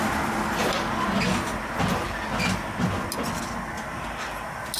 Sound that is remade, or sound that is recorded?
recorded